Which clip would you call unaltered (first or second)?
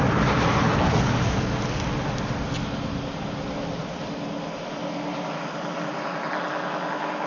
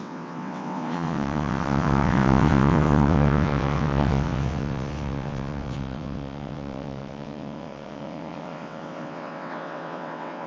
first